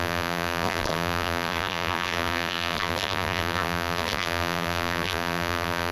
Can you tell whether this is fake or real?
fake